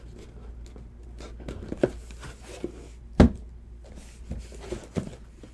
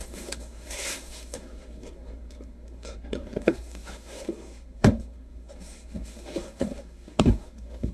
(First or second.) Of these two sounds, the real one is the first